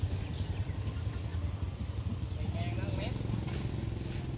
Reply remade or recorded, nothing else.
recorded